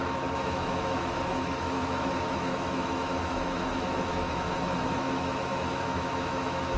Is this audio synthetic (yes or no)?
yes